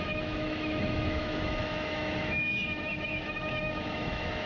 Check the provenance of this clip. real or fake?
fake